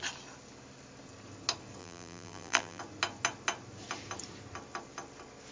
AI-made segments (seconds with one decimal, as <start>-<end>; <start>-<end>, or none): 1.8-2.8